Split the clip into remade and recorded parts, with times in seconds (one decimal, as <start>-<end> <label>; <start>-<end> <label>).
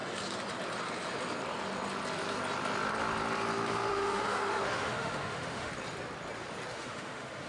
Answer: 0.0-3.9 recorded; 3.9-5.7 remade; 5.7-6.7 recorded; 6.7-7.5 remade